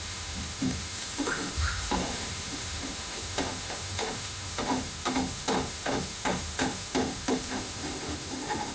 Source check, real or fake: fake